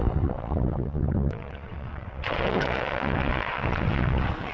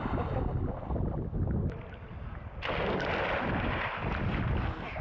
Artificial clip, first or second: first